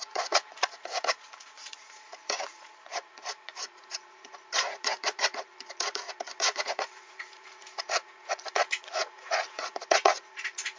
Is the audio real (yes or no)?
no